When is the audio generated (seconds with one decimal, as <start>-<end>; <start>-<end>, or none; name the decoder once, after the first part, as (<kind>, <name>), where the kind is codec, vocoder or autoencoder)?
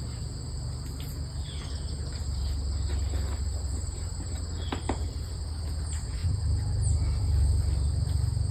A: none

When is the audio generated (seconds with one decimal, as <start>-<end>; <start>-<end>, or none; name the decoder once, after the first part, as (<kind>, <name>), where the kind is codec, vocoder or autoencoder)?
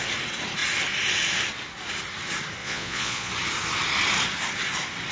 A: 2.6-3.3 (vocoder, Vocos)